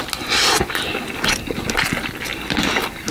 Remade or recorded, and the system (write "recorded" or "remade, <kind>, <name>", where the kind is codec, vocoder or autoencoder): recorded